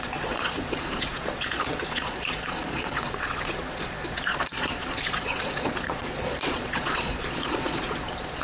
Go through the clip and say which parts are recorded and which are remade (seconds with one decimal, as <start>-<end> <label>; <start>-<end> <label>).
0.0-8.4 remade